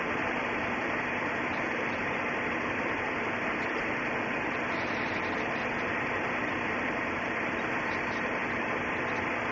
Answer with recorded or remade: remade